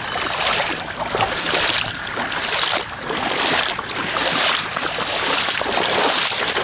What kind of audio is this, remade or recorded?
remade